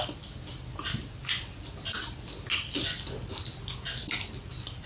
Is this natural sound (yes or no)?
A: yes